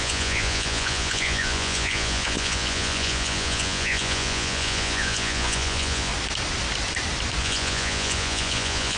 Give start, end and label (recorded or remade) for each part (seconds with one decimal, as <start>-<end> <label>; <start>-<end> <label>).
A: 0.0-6.1 remade; 6.1-7.4 recorded; 7.4-9.0 remade